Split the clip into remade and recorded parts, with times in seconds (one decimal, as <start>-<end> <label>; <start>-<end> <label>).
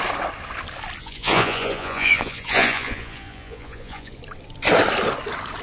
0.0-1.0 recorded; 1.0-4.1 remade; 4.1-5.6 recorded